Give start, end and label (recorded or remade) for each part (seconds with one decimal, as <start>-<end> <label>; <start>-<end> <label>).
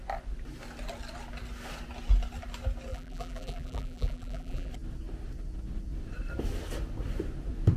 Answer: 0.0-2.9 recorded; 2.9-4.7 remade; 4.7-7.8 recorded